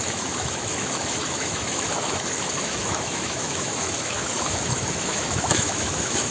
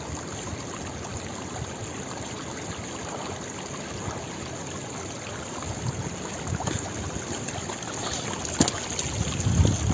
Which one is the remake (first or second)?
first